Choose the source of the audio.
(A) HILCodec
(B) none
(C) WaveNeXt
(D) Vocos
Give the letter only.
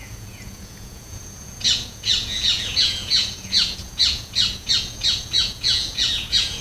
D